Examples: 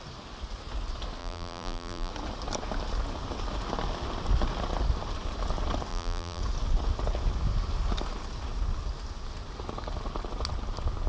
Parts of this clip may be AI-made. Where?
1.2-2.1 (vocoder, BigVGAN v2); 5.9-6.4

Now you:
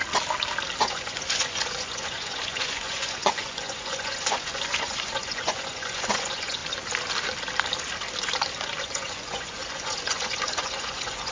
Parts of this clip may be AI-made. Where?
0.8-6.6 (vocoder, Vocos); 8.8-11.3